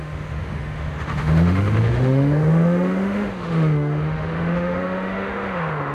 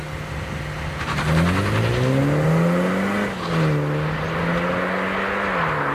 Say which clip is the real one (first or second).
second